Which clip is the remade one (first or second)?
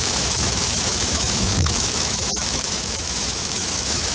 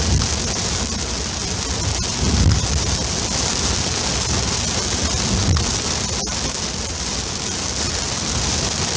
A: first